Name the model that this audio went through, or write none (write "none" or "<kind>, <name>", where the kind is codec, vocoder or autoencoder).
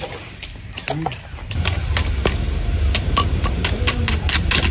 none